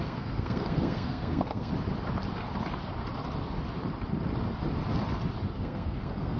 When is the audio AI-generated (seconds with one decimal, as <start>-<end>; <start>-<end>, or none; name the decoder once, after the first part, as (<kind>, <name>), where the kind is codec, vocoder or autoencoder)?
0.0-1.7 (codec, SNAC); 5.5-6.4